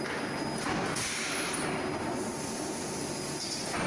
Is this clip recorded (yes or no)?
yes